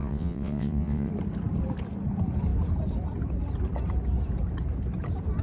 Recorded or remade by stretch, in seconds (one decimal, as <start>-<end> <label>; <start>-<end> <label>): 0.0-1.1 remade; 1.1-5.4 recorded